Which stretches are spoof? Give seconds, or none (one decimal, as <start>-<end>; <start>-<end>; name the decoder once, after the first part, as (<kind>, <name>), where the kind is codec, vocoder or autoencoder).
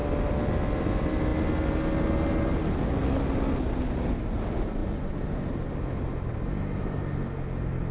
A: none